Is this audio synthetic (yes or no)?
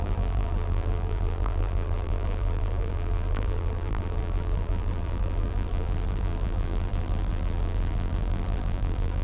yes